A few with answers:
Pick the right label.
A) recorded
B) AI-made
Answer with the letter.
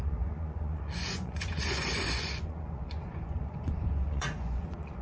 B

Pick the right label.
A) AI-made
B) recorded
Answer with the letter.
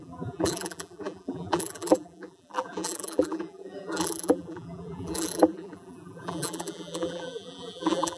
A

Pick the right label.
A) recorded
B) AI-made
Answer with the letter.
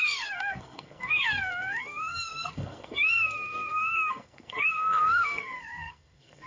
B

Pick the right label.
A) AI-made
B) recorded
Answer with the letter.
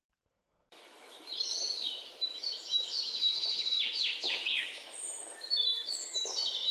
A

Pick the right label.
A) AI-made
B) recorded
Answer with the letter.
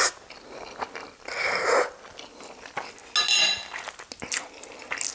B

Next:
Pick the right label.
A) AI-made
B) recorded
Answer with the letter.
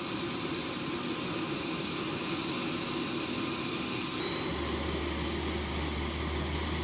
B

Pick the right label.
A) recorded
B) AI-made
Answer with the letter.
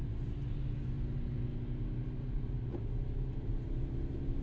A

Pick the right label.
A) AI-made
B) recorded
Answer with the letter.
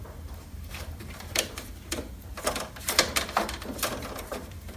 A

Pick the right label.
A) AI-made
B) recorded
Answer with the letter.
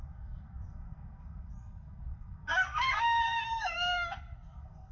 A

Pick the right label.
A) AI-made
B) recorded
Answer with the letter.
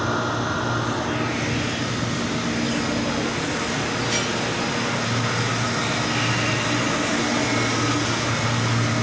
B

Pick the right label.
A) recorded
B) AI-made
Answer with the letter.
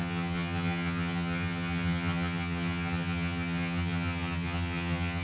B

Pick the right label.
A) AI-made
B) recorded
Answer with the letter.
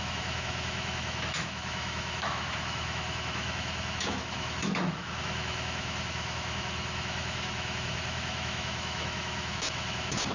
A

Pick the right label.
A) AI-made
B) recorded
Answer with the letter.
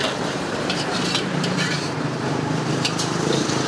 A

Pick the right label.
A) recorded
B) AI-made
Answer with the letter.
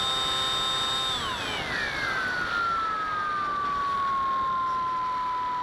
A